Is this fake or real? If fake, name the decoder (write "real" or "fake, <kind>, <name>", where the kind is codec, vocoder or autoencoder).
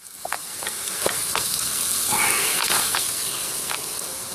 fake, codec, SNAC